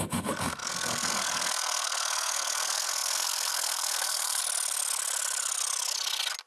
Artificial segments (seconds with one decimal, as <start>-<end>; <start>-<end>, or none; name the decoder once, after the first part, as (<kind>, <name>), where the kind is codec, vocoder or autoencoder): 0.0-4.4 (codec, SNAC)